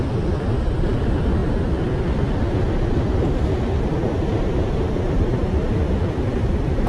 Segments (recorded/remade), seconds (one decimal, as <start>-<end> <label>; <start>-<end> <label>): 0.0-6.9 recorded